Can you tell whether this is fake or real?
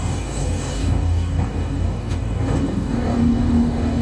fake